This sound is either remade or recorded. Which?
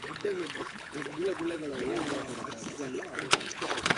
remade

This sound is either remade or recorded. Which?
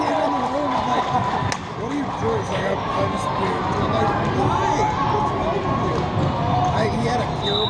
recorded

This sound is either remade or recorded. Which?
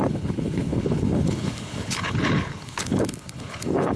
remade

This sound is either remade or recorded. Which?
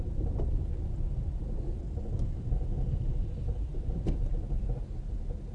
recorded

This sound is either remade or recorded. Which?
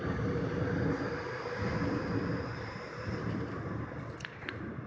recorded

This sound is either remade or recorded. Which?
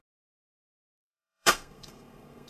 remade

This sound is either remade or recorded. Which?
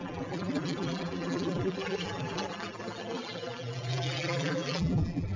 remade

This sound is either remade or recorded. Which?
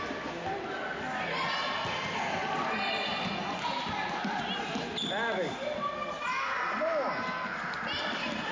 recorded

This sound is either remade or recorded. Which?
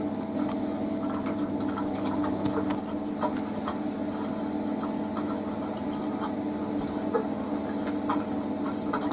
recorded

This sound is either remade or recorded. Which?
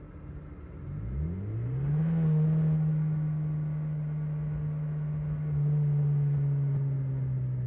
recorded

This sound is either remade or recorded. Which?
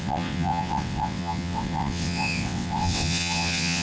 remade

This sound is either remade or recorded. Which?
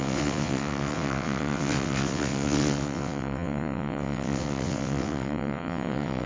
remade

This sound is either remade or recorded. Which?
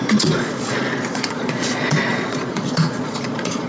remade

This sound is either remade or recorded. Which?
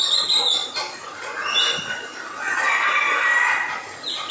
recorded